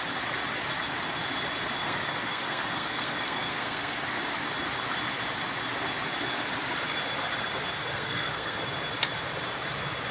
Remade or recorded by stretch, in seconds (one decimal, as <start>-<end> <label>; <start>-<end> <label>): 0.0-1.8 recorded; 1.8-4.2 remade; 4.2-7.9 recorded; 7.9-8.6 remade; 8.6-10.1 recorded